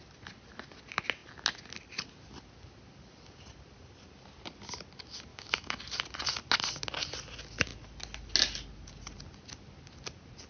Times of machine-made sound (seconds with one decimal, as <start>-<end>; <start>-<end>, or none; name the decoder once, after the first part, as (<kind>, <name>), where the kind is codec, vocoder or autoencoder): 5.3-5.8 (autoencoder, DAC-VAE)